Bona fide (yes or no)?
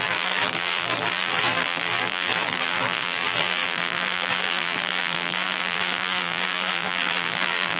no